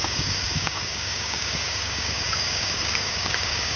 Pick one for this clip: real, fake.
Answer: fake